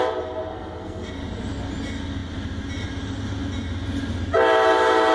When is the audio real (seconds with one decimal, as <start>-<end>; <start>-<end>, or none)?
0.0-0.5; 1.1-5.1